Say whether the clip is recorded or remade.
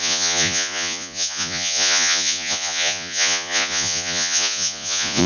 remade